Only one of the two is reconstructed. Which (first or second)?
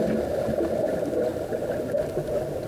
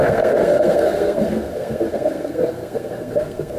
second